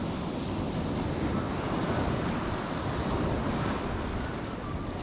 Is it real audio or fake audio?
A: real